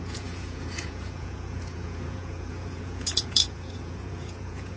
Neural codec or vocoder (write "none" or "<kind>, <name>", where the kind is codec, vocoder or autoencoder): vocoder, Vocos